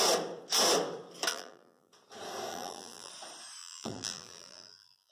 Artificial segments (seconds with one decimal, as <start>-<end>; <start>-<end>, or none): 1.3-1.9; 2.5-3.1; 3.6-5.1